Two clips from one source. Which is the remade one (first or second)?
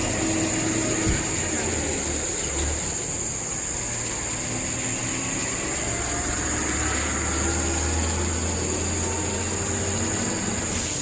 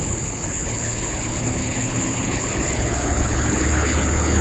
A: second